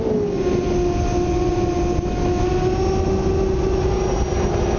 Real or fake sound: real